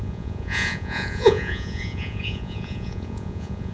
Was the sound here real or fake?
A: fake